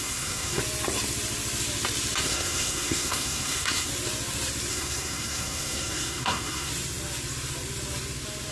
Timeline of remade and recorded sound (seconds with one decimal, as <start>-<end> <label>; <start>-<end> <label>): 0.0-0.6 remade; 0.6-2.2 recorded; 2.2-3.9 remade; 3.9-4.7 recorded; 4.7-6.7 remade; 6.7-8.5 recorded